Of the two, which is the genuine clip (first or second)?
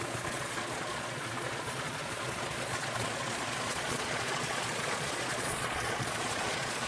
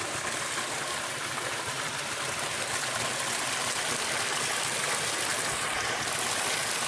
second